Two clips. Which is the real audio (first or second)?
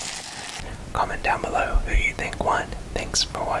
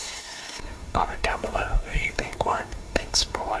first